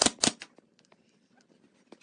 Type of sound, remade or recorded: recorded